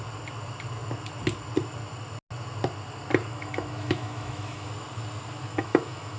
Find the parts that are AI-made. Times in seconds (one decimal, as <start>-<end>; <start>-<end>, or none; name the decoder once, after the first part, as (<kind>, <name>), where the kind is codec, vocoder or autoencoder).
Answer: 3.3-4.7 (autoencoder, DAC-VAE); 5.5-6.2